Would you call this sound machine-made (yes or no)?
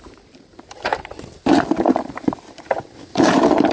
yes